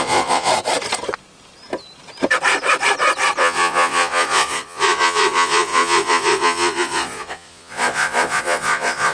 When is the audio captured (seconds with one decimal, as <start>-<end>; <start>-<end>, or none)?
0.5-3.4